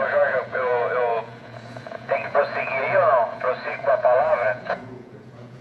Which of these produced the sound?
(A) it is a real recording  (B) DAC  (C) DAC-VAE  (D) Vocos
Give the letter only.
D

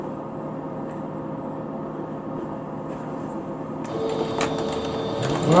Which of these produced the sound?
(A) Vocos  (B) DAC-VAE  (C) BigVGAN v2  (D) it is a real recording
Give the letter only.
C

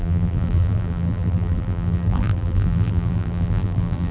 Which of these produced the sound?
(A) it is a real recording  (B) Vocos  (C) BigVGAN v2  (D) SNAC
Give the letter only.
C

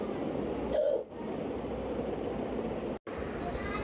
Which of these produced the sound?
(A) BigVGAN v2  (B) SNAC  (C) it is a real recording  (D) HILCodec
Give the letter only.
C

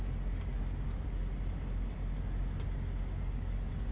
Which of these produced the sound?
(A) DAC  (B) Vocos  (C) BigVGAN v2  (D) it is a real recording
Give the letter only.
D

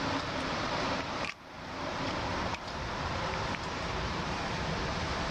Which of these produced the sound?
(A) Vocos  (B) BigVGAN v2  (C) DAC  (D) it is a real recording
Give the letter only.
B